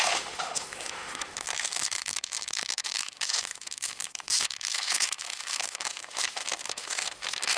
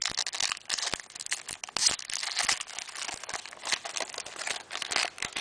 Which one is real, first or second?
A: second